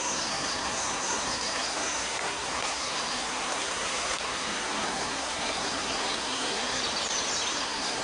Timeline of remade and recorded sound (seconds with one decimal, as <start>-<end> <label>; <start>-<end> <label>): 0.0-6.8 remade; 6.8-7.5 recorded; 7.5-8.0 remade